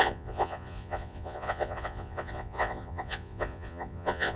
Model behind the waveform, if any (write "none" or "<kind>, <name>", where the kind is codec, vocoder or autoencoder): vocoder, Vocos